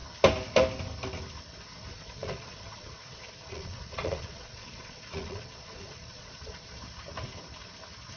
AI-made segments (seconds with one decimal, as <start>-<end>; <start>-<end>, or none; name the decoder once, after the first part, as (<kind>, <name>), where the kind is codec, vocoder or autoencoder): 1.9-6.8 (vocoder, Vocos)